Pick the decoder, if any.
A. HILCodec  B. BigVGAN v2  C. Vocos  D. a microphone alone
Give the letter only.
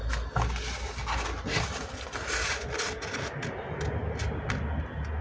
D